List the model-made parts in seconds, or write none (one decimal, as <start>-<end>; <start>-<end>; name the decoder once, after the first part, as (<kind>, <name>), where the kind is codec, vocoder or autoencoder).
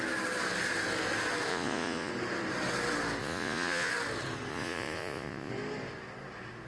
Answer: 1.5-2.1 (vocoder, Vocos); 3.2-3.9; 4.5-5.5